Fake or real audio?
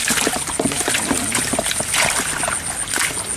real